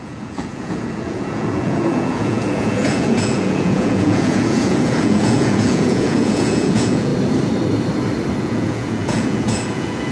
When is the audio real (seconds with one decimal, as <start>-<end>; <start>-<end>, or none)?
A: 7.1-8.4